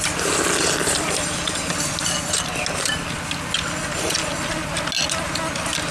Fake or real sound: real